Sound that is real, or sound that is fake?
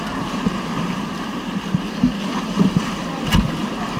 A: real